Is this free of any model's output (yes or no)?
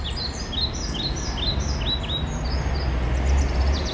yes